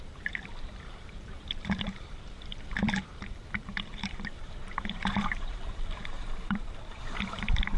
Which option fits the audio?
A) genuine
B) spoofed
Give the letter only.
B